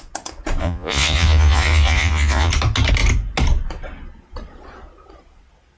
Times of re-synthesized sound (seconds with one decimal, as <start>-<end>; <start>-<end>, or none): 0.6-2.5